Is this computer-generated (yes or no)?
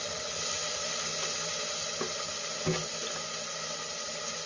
no